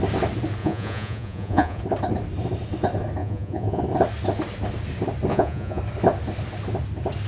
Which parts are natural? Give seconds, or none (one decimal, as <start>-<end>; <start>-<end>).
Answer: 0.0-0.6; 1.8-3.2; 3.8-5.3; 5.8-7.3